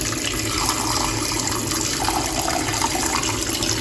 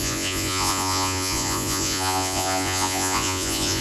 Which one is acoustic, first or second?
first